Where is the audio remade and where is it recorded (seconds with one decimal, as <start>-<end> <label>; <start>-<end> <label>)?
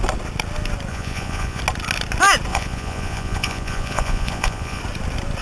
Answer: 0.0-0.9 recorded; 0.9-1.6 remade; 1.6-2.5 recorded; 2.5-4.8 remade; 4.8-5.4 recorded